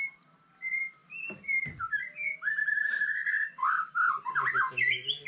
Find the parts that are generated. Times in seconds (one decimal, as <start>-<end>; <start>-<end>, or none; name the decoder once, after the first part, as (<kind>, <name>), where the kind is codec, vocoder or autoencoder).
none